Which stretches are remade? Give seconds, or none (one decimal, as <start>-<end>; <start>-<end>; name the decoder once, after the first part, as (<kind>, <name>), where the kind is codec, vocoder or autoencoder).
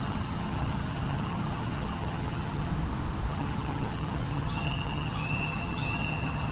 0.0-2.7 (vocoder, HiFi-GAN); 3.3-6.5